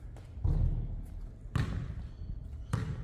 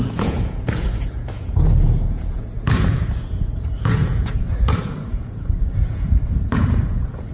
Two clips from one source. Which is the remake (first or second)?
second